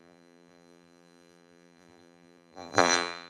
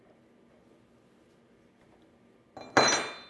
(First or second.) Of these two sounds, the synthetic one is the first